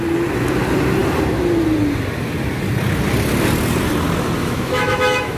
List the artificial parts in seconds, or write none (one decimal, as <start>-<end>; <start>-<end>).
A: 4.4-5.4